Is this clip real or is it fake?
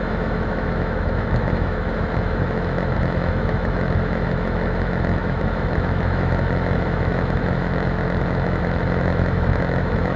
fake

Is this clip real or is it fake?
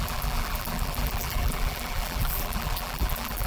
fake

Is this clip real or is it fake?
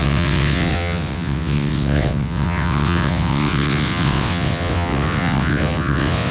fake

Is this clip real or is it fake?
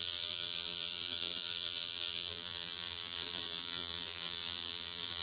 fake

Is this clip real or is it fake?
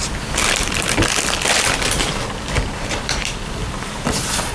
fake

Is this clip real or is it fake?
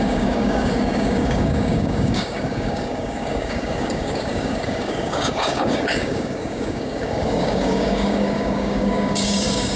fake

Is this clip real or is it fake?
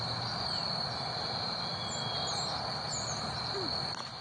real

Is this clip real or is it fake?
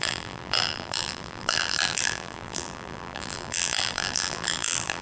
fake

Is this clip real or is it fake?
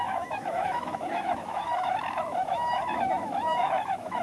fake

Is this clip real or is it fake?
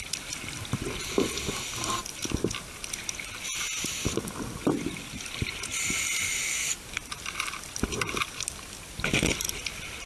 real